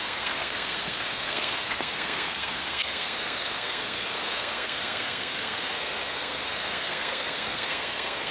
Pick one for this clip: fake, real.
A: fake